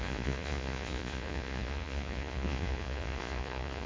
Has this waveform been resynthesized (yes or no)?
yes